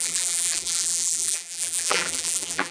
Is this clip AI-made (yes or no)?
yes